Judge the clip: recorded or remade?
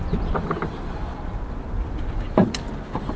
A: recorded